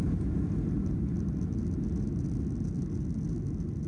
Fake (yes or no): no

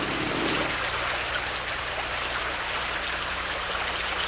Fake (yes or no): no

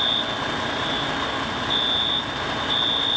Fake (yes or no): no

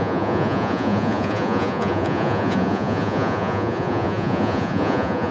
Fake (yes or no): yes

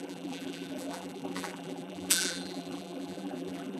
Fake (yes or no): yes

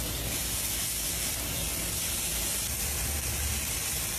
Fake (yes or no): no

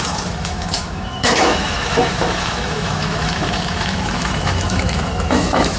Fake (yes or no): yes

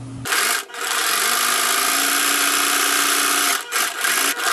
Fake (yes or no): no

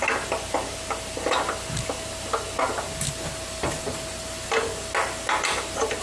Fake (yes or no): no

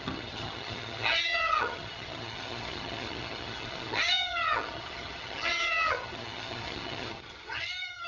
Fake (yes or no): yes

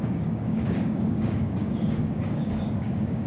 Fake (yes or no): yes